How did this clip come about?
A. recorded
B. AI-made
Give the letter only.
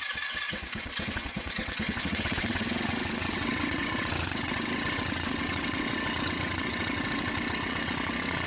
B